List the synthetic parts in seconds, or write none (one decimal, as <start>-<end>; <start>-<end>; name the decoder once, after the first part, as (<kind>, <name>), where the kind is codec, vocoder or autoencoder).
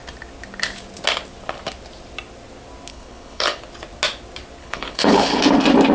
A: 2.9-3.6 (codec, HILCodec); 4.6-5.4